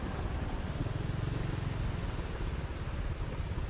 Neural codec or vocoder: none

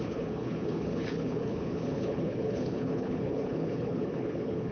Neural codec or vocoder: codec, HILCodec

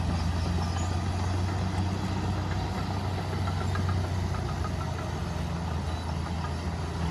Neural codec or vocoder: none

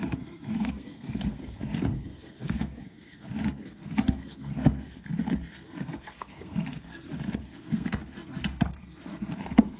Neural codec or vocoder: codec, SNAC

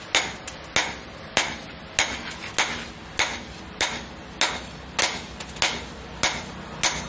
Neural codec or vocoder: none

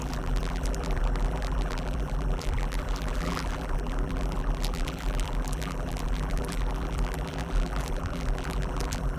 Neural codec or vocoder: vocoder, BigVGAN v2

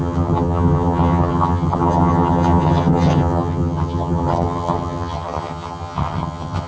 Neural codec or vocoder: vocoder, HiFi-GAN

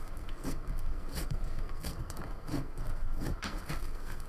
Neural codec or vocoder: codec, SNAC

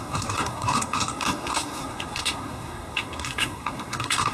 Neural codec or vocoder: codec, SNAC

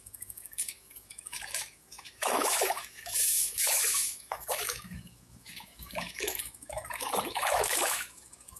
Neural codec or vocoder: autoencoder, DAC-VAE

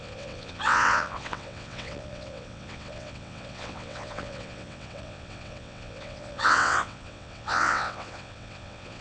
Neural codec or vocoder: vocoder, WaveNeXt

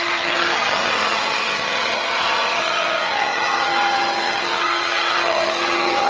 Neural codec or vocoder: vocoder, HiFi-GAN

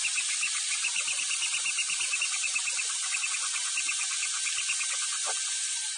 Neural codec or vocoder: none